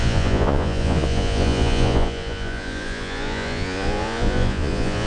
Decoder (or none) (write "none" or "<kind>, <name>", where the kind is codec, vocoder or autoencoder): vocoder, Vocos